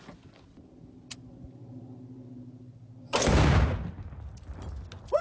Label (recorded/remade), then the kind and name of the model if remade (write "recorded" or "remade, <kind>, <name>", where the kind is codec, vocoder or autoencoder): recorded